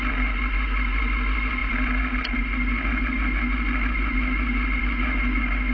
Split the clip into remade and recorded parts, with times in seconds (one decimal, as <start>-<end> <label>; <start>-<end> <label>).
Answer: 0.0-5.7 recorded